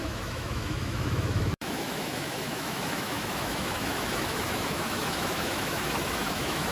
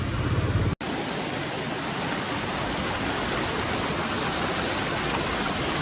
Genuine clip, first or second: second